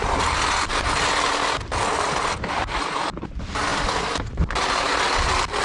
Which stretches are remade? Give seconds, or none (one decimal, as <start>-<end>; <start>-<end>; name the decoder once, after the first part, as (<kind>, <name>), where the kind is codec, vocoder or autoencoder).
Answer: none